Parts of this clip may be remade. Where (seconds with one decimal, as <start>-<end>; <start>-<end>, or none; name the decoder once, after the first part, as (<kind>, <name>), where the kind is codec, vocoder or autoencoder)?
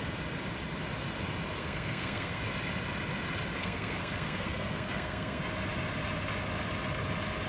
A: 1.6-2.4 (codec, SNAC); 3.6-5.4